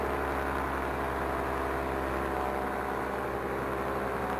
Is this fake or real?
real